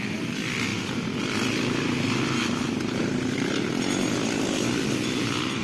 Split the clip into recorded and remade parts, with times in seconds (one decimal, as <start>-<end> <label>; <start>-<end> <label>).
0.0-5.6 recorded